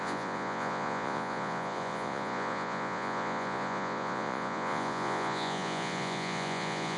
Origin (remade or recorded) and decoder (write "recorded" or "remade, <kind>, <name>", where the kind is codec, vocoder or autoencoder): remade, vocoder, Vocos